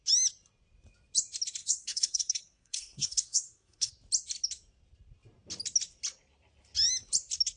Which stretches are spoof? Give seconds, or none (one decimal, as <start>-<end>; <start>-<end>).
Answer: 1.6-3.9